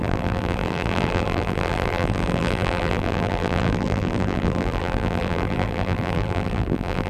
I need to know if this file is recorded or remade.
remade